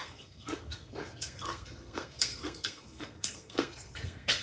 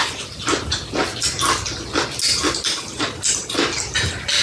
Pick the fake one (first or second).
first